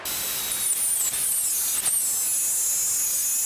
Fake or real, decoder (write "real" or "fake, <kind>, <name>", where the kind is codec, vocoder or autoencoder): real